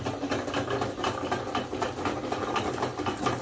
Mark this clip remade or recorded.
recorded